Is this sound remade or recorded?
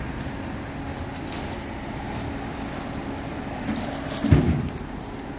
recorded